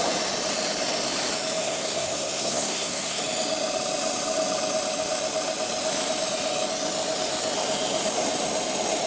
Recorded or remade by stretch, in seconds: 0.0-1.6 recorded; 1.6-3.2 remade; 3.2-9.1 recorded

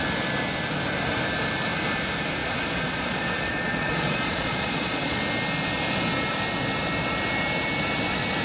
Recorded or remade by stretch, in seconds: 0.0-2.4 recorded; 2.4-5.2 remade; 5.2-8.4 recorded

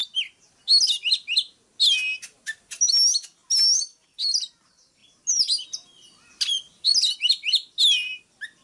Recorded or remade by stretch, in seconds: 0.0-8.6 recorded

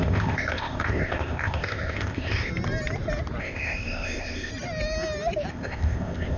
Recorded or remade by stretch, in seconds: 0.0-2.5 remade; 2.5-3.4 recorded; 3.4-4.5 remade; 4.5-5.5 recorded; 5.5-6.4 remade